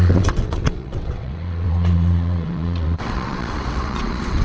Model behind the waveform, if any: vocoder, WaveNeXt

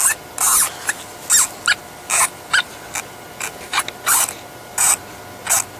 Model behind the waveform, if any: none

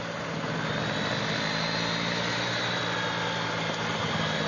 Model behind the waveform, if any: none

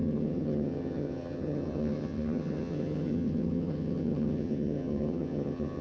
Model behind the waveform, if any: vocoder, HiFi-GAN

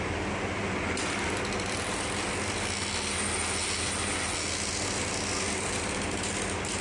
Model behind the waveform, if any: none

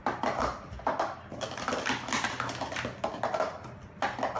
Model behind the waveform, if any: none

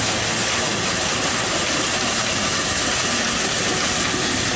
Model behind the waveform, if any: none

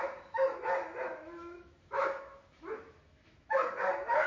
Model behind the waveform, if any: autoencoder, DAC-VAE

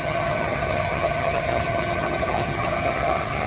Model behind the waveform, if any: vocoder, HiFi-GAN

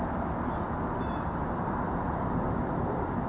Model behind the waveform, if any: none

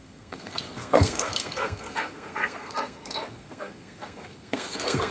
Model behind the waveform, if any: codec, SNAC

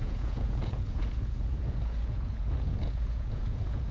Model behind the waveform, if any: vocoder, Vocos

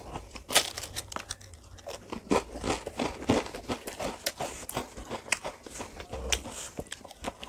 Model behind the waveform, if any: none